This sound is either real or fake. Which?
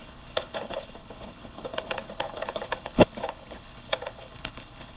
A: fake